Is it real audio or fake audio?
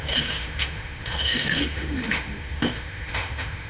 fake